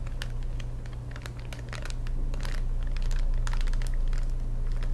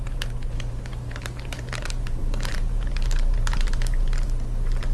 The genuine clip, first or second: first